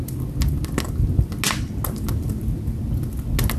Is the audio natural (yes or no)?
yes